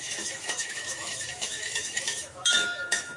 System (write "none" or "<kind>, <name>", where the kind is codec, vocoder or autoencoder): autoencoder, DAC-VAE